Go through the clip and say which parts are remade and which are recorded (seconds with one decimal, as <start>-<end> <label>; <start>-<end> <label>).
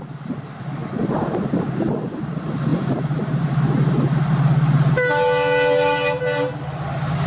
0.0-7.3 recorded